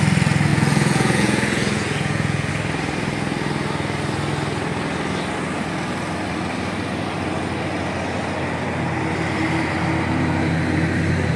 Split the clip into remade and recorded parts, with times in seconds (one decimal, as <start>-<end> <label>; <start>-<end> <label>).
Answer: 0.0-0.5 recorded; 0.5-2.5 remade; 2.5-11.4 recorded